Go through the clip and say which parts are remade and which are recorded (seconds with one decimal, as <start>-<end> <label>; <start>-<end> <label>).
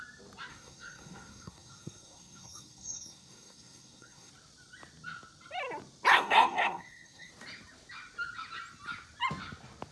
0.0-0.5 recorded; 0.5-4.3 remade; 4.3-6.1 recorded; 6.1-7.3 remade; 7.3-9.9 recorded